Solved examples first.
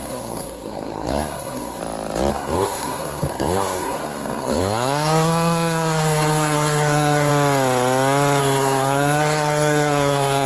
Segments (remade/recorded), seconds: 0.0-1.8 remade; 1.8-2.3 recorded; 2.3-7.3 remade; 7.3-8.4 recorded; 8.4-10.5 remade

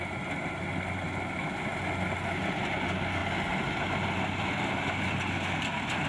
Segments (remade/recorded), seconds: 0.0-6.1 recorded

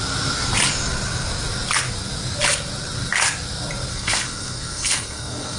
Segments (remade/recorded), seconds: 0.0-3.9 recorded; 3.9-5.6 remade

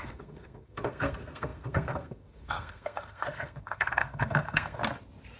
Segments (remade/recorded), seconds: 0.0-4.8 remade; 4.8-5.4 recorded

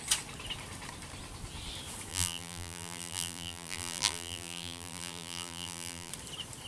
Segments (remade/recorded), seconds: 0.0-2.1 recorded; 2.1-6.1 remade; 6.1-6.7 recorded

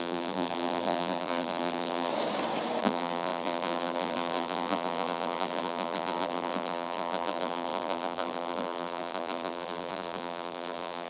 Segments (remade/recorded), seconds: 0.0-2.1 remade; 2.1-2.8 recorded; 2.8-11.1 remade

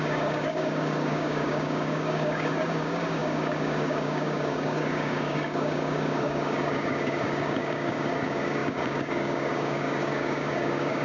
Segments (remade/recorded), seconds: 0.0-11.0 remade

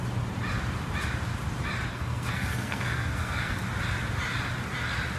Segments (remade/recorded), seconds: 0.0-1.9 recorded; 1.9-3.6 remade; 3.6-5.2 recorded